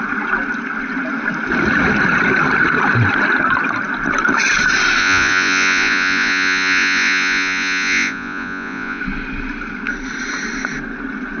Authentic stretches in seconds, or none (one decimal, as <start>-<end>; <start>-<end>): 0.0-5.0; 9.0-11.4